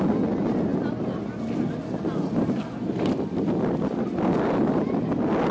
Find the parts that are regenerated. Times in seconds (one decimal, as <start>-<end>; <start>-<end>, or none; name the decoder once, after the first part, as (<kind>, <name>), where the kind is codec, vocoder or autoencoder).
none